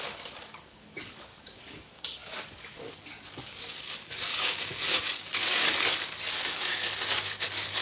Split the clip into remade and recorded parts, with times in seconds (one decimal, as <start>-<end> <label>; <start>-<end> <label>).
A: 0.0-7.8 remade